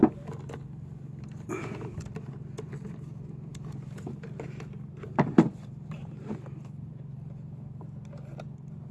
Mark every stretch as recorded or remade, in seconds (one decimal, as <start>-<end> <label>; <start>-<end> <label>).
0.0-3.5 recorded; 3.5-6.9 remade; 6.9-8.9 recorded